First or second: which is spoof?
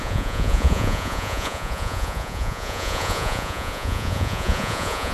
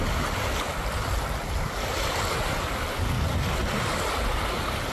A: first